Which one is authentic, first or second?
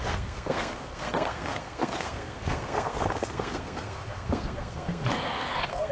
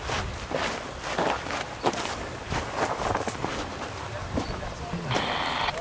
second